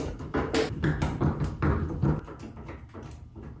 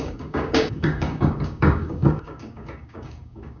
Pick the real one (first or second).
first